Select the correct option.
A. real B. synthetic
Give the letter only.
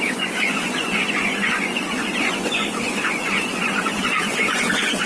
B